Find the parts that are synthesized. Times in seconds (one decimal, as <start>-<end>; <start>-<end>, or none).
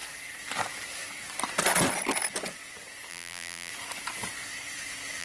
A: 3.1-3.7